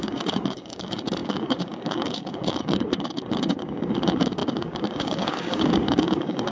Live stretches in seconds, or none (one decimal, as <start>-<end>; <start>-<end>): none